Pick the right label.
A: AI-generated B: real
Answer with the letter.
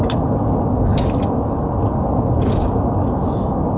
B